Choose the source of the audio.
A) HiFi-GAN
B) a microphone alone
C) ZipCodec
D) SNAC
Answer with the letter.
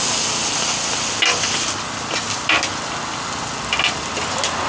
B